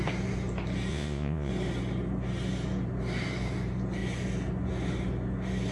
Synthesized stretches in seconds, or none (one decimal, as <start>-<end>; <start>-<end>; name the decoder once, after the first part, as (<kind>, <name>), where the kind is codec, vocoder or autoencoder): 0.9-1.5 (vocoder, Vocos)